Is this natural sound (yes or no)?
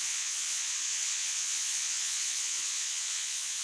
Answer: no